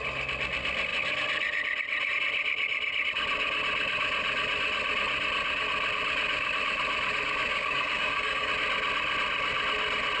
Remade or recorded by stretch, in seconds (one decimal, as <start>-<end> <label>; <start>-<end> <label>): 0.0-7.5 recorded; 7.5-8.5 remade; 8.5-10.2 recorded